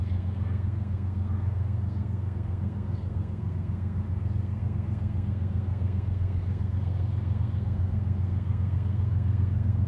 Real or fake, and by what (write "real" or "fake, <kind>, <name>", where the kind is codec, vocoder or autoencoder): fake, codec, SNAC